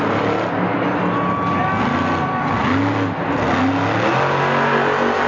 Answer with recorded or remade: recorded